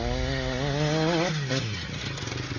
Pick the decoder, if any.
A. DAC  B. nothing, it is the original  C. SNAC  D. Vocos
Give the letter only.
B